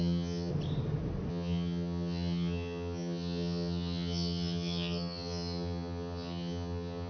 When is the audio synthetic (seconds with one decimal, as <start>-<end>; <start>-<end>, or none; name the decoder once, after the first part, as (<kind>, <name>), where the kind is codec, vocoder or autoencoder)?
0.0-0.5 (vocoder, HiFi-GAN); 1.3-7.1